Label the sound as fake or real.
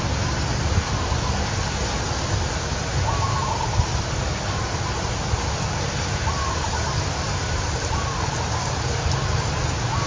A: real